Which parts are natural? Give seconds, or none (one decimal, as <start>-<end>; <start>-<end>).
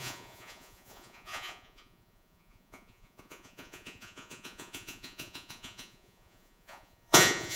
none